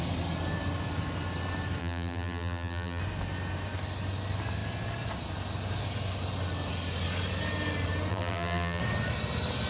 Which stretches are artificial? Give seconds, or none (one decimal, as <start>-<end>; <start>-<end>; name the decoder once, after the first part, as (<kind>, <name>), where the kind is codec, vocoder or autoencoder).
1.8-3.0 (vocoder, BigVGAN v2); 8.1-8.8